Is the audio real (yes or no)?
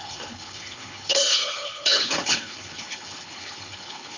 no